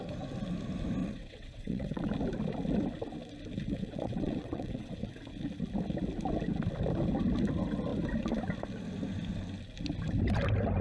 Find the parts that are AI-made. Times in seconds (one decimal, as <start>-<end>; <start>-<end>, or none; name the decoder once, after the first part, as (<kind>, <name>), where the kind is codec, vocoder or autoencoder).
1.0-2.1 (vocoder, WaveNeXt); 3.6-5.2

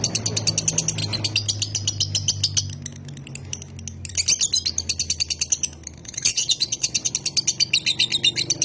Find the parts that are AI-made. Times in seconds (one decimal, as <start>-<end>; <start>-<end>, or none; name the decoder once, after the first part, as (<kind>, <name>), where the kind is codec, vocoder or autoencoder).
6.0-7.1 (vocoder, WaveNeXt)

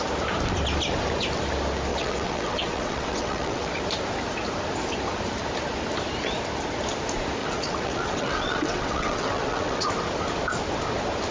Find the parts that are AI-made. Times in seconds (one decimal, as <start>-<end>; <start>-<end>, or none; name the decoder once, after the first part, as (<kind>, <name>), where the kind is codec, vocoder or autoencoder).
1.9-3.8 (vocoder, WaveNeXt); 7.4-9.9

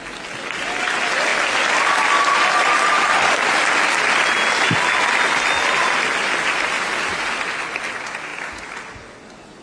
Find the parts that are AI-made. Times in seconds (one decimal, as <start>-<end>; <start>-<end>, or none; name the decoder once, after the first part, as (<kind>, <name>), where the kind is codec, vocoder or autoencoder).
none

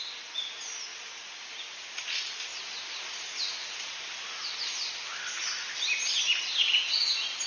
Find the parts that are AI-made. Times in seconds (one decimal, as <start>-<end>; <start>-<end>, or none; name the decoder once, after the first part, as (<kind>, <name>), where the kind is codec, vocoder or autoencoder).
none

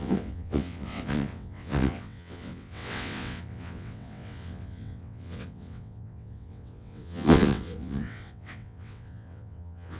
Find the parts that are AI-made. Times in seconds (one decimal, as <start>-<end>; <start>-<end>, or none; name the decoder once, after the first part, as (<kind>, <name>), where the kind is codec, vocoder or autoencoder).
0.0-10.0 (vocoder, WaveNeXt)